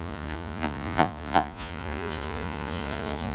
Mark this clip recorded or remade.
remade